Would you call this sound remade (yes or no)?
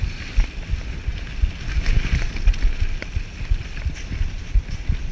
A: yes